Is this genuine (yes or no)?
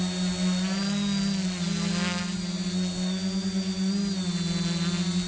yes